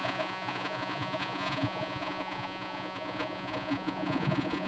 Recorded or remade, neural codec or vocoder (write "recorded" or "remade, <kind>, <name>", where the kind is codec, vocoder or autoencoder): remade, vocoder, Vocos